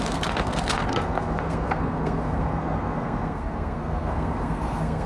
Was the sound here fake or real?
fake